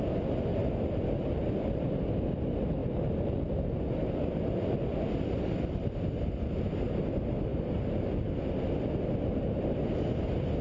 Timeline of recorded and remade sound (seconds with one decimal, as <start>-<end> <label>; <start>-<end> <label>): 0.0-10.6 recorded